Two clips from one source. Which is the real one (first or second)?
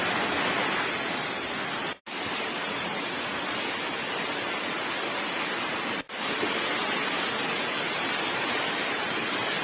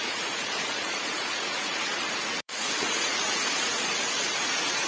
first